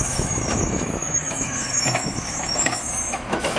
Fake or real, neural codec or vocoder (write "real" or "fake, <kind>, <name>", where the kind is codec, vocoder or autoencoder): fake, autoencoder, DAC-VAE